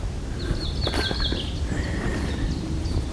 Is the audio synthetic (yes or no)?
no